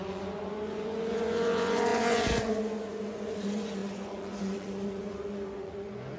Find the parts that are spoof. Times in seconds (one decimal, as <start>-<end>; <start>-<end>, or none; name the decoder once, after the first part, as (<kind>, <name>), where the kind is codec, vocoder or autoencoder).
0.0-6.2 (vocoder, Vocos)